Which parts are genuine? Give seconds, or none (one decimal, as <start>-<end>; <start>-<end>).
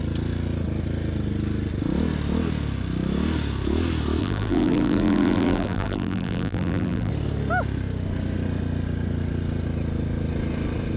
0.0-4.2; 7.1-11.0